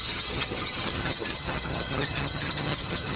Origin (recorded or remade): remade